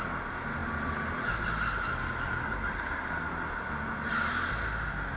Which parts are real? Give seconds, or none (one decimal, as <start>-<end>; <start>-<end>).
0.0-5.2